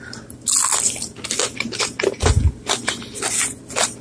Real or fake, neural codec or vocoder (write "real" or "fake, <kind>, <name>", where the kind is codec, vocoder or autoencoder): real